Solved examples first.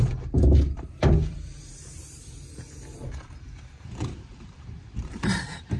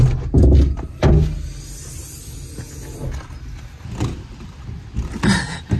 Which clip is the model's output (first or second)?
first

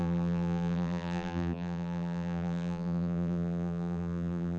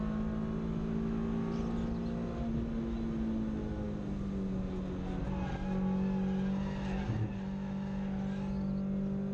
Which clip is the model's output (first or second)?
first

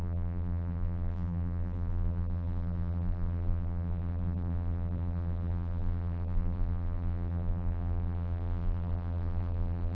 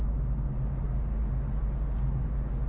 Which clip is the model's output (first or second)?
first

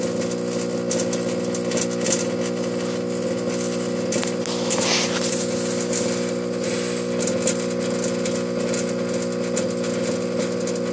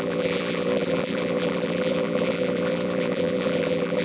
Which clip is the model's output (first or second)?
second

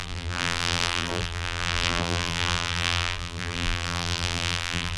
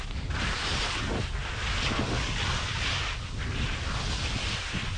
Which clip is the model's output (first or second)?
first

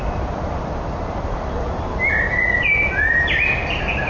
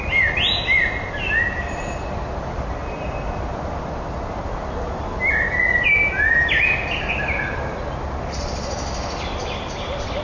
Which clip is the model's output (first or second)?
first